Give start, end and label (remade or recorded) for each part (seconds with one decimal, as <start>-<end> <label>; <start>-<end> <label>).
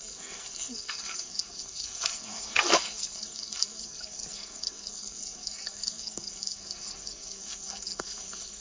0.0-8.6 remade